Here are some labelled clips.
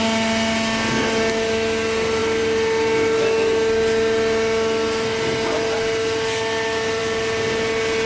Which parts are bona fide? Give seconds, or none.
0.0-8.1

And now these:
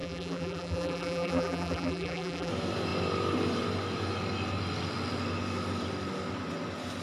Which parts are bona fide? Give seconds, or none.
2.5-7.0

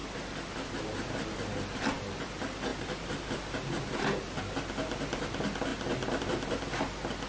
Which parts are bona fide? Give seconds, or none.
0.7-2.7; 4.5-5.7; 6.2-7.3